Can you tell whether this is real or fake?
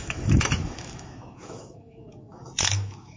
fake